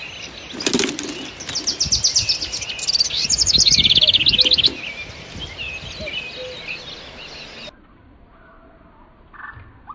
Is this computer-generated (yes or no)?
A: no